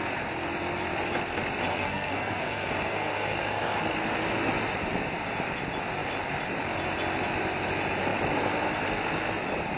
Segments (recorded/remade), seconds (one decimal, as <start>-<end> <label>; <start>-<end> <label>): 0.0-1.7 recorded; 1.7-3.8 remade; 3.8-9.8 recorded